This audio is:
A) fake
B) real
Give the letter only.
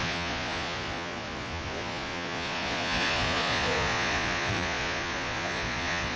A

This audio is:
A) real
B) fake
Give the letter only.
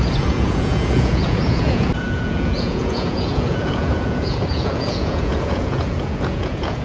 B